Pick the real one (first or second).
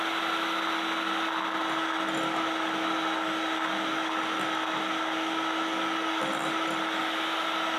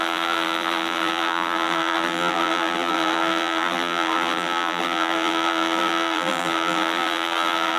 first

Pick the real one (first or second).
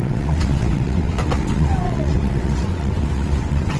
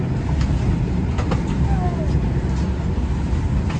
second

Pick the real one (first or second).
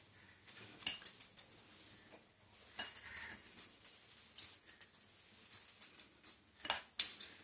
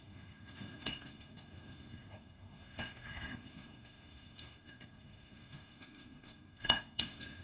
first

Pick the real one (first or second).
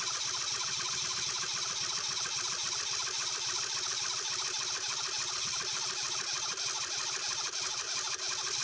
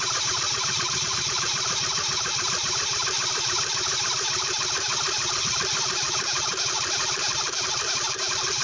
first